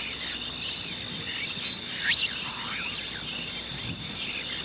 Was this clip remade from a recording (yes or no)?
no